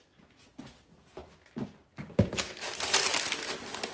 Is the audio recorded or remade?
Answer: recorded